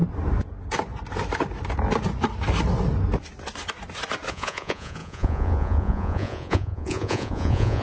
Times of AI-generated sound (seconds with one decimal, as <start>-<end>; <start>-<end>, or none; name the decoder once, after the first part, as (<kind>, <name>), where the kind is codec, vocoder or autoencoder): 4.3-7.8 (vocoder, Vocos)